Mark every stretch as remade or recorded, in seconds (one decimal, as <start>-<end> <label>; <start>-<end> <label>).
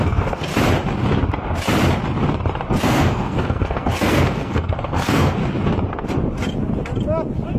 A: 0.0-0.5 remade; 0.5-2.8 recorded; 2.8-5.4 remade; 5.4-7.6 recorded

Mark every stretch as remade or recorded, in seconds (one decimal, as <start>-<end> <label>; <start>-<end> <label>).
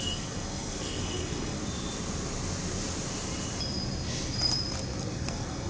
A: 0.0-1.6 remade; 1.6-5.0 recorded; 5.0-5.7 remade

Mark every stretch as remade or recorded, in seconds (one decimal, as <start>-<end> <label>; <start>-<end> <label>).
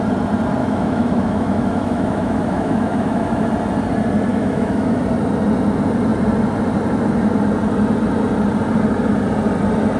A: 0.0-0.6 recorded; 0.6-3.5 remade; 3.5-4.3 recorded; 4.3-5.0 remade; 5.0-10.0 recorded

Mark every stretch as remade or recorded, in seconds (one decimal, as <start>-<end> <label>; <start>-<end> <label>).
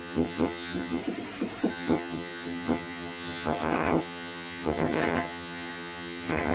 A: 0.0-1.0 remade; 1.0-1.7 recorded; 1.7-6.5 remade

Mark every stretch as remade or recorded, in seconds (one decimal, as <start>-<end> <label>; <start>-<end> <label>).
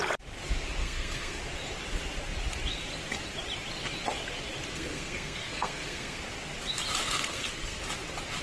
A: 0.0-0.8 recorded; 0.8-1.4 remade; 1.4-4.7 recorded; 4.7-6.2 remade; 6.2-7.0 recorded; 7.0-7.8 remade; 7.8-8.4 recorded